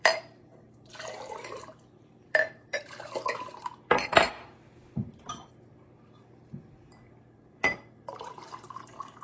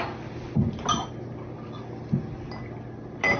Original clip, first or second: second